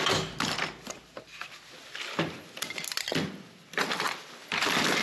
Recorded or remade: recorded